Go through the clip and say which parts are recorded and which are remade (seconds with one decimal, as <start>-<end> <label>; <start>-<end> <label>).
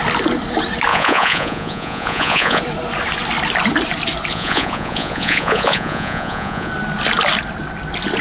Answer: 0.0-0.9 recorded; 0.9-2.6 remade; 2.6-4.3 recorded; 4.3-6.7 remade; 6.7-8.2 recorded